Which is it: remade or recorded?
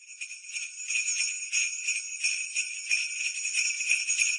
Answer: recorded